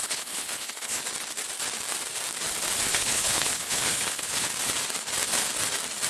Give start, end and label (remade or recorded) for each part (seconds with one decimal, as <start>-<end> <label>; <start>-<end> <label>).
0.0-1.0 remade; 1.0-2.9 recorded; 2.9-4.5 remade; 4.5-6.1 recorded